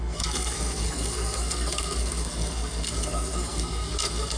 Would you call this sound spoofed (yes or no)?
yes